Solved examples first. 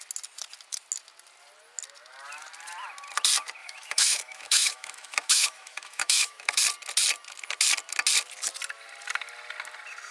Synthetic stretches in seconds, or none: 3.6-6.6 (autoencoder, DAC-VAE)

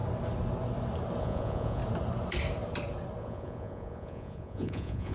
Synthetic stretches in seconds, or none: 1.2-1.8 (vocoder, Vocos); 3.2-5.1

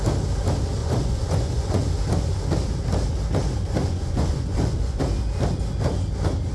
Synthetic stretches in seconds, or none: 0.8-1.9 (vocoder, Vocos); 3.8-5.0

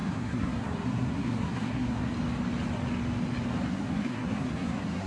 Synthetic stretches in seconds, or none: 0.0-2.0 (codec, SNAC); 3.7-5.1

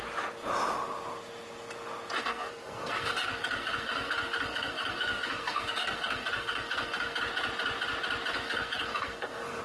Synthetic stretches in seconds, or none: 2.2-7.2 (codec, SNAC); 8.3-9.6

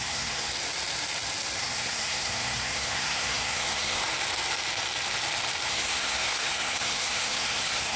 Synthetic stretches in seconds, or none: 0.0-0.5 (codec, SNAC); 1.6-4.0; 5.7-8.0

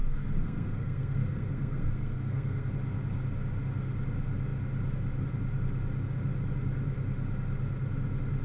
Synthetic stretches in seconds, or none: 0.0-2.7 (codec, SNAC)